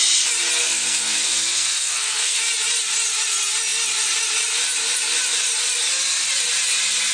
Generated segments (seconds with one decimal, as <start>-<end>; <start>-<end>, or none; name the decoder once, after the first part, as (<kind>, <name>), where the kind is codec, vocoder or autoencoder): 0.6-2.4 (codec, SNAC)